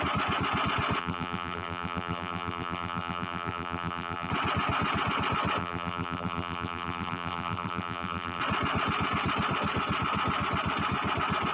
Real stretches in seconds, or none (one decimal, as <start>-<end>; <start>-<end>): 0.0-1.0; 4.3-5.6; 8.4-11.5